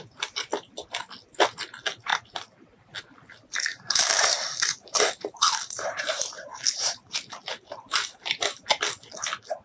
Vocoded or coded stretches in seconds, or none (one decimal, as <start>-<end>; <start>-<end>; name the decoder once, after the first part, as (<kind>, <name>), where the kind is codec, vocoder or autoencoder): 3.7-8.6 (vocoder, BigVGAN v2)